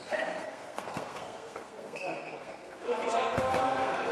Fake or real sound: fake